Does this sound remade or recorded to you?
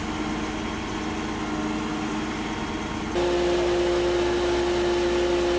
recorded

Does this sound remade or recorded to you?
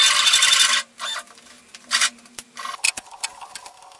recorded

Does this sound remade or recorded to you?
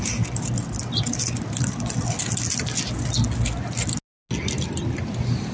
recorded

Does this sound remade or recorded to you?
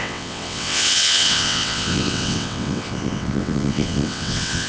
remade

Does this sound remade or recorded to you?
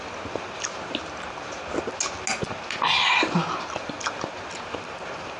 recorded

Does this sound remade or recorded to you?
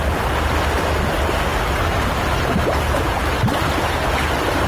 recorded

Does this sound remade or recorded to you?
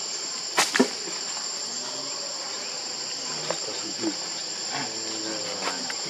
remade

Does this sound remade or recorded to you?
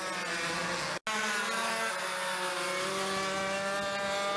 recorded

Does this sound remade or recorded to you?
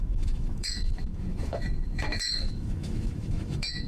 remade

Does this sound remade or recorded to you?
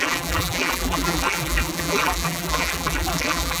remade